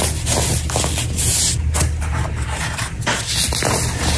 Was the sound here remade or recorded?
recorded